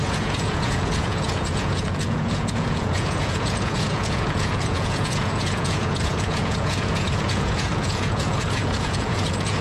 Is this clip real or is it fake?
fake